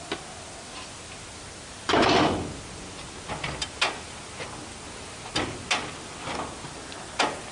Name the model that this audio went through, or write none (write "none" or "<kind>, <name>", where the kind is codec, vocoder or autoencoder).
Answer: none